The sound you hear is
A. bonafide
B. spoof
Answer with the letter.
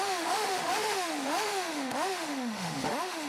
B